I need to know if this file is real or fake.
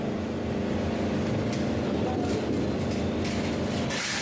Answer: real